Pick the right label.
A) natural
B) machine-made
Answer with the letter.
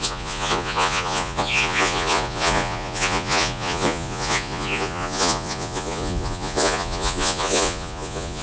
B